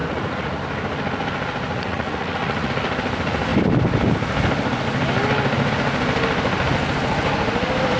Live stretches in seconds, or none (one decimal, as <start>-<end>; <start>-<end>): 0.6-1.7; 2.7-8.0